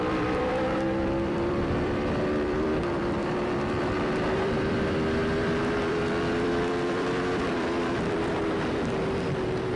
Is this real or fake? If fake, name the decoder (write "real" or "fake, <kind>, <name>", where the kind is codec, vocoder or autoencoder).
fake, vocoder, BigVGAN v2